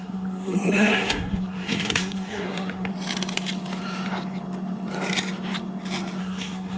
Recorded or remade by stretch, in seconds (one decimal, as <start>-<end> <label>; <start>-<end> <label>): 0.0-2.9 remade; 2.9-6.2 recorded; 6.2-6.8 remade